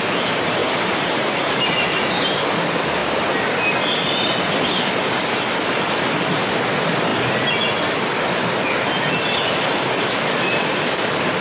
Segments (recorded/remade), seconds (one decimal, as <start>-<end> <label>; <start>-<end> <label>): 0.0-0.6 recorded; 0.6-2.4 remade; 2.4-11.4 recorded